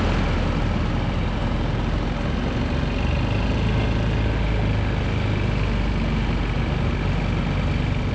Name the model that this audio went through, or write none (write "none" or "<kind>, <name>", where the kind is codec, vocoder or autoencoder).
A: none